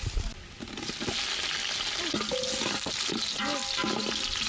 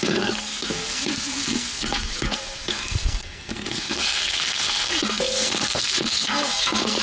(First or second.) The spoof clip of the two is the second